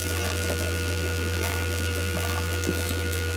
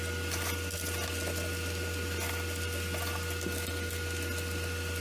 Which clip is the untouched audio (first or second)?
second